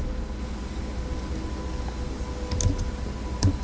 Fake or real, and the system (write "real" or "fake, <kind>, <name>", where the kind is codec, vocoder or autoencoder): real